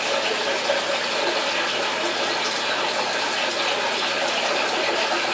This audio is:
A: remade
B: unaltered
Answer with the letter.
B